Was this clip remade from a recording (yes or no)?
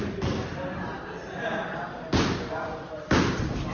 no